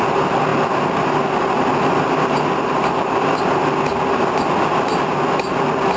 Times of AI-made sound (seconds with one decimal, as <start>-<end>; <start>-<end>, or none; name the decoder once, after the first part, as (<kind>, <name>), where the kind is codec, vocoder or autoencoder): none